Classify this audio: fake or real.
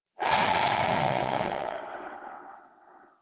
fake